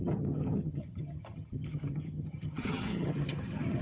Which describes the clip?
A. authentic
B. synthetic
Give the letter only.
B